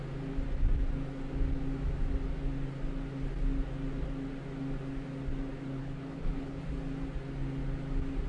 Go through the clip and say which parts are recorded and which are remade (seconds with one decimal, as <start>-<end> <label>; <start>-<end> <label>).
0.0-5.8 recorded; 5.8-6.6 remade; 6.6-8.3 recorded